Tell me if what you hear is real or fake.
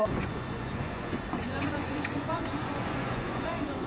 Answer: fake